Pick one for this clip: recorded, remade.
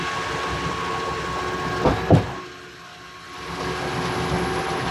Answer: recorded